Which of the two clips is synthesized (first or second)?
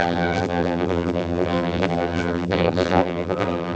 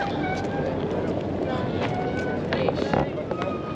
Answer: first